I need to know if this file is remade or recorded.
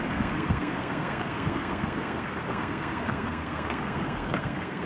remade